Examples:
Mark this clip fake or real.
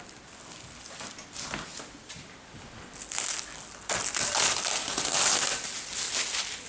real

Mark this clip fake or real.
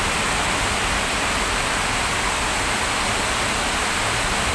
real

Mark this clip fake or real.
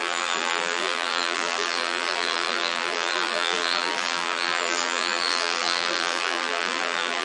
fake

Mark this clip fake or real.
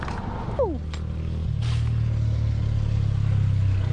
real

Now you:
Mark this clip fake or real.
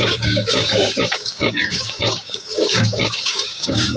fake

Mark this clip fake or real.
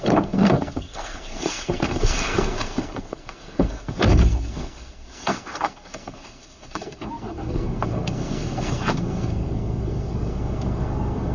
fake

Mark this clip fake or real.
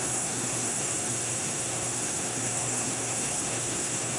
fake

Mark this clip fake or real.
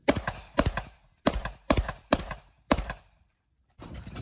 fake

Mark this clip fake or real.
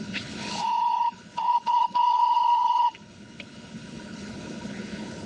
fake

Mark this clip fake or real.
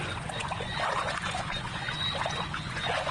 fake